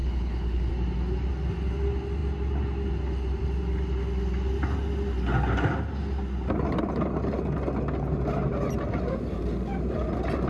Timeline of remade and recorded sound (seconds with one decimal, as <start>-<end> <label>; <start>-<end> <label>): 0.0-0.7 remade; 0.7-10.5 recorded